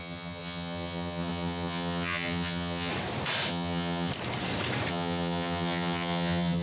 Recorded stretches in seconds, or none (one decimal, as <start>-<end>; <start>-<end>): 2.9-3.5; 4.1-4.9